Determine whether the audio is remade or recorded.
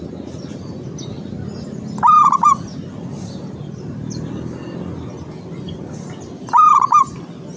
recorded